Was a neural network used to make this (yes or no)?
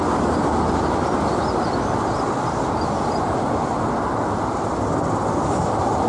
no